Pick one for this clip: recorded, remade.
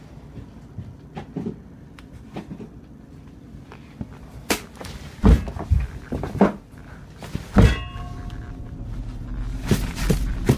recorded